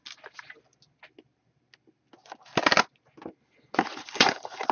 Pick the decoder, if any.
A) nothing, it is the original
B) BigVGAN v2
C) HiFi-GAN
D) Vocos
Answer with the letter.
A